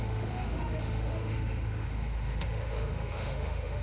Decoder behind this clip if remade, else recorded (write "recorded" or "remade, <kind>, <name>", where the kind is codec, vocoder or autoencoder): remade, autoencoder, DAC-VAE